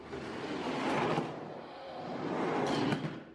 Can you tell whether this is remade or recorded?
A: recorded